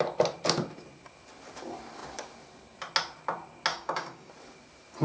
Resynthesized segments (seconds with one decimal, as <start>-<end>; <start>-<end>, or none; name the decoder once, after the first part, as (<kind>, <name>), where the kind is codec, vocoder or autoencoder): 3.7-4.3 (codec, DAC)